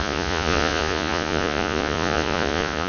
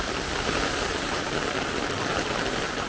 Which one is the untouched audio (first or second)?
second